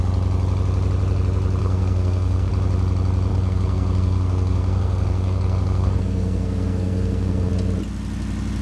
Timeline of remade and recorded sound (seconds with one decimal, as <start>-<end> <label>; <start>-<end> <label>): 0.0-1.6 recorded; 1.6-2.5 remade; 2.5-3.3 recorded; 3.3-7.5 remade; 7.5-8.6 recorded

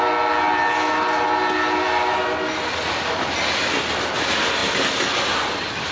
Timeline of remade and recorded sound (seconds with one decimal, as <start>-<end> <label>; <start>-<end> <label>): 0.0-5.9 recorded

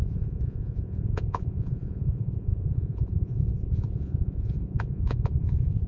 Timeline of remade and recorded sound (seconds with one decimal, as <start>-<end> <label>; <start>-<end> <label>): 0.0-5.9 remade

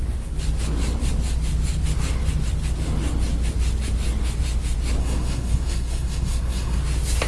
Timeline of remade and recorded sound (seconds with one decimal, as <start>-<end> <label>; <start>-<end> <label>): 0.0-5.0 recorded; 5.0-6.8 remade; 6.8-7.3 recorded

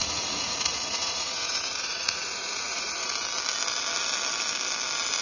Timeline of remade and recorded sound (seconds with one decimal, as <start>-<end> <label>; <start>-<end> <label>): 0.0-3.1 remade; 3.1-5.2 recorded